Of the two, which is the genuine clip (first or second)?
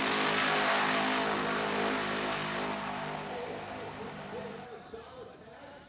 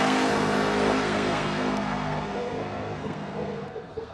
first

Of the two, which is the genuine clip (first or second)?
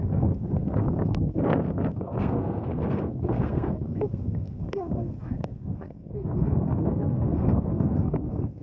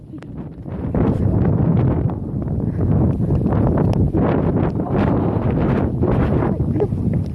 second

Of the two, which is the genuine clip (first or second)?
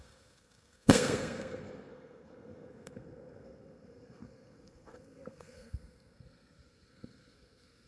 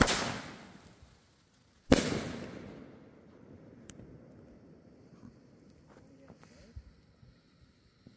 second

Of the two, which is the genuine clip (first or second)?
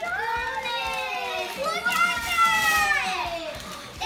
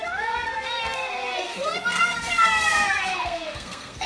first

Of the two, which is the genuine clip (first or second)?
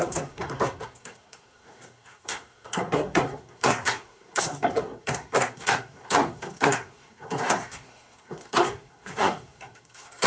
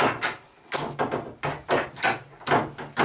second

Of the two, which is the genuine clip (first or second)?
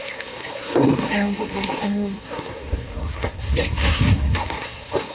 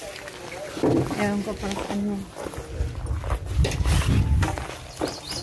second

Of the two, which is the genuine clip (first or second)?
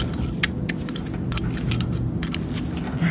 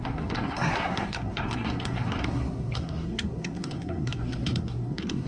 first